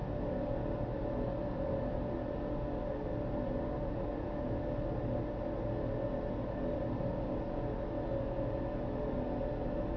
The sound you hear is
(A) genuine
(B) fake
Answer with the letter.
A